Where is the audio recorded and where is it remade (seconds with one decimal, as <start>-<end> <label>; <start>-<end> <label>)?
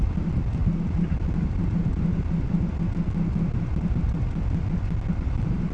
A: 0.0-5.7 recorded